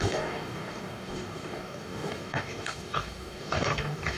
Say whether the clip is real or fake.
fake